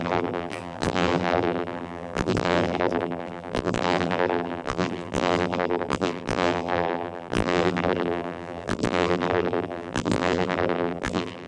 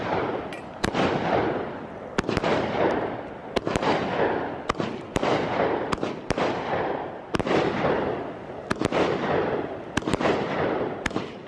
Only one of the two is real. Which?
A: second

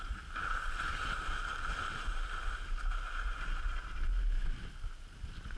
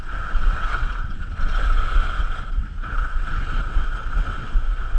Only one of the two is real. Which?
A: first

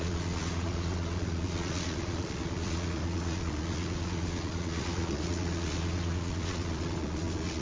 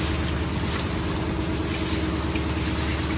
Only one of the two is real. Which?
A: second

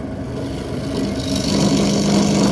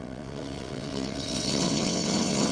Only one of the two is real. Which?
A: first